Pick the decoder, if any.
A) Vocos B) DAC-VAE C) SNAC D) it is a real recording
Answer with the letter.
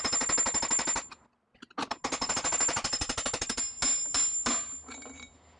D